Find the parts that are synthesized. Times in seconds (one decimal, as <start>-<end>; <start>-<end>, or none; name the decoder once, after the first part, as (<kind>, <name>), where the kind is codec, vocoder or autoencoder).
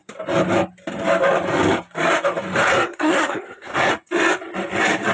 2.7-3.9 (codec, SNAC)